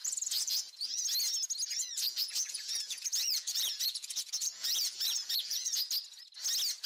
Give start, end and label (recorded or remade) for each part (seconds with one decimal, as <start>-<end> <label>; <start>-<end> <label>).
0.0-1.0 remade; 1.0-1.8 recorded; 1.8-5.9 remade; 5.9-6.9 recorded